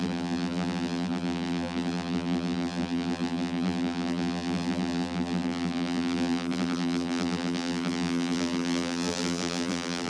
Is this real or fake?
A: fake